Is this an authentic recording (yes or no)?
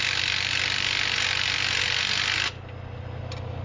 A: yes